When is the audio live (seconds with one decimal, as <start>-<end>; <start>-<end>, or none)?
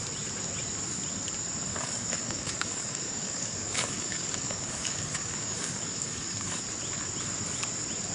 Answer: 0.0-1.7; 6.6-8.1